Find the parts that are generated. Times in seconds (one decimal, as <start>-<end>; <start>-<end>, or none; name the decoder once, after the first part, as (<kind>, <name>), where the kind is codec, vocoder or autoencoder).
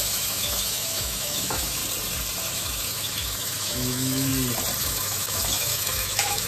0.0-1.8 (autoencoder, DAC-VAE); 2.4-4.3; 4.8-6.5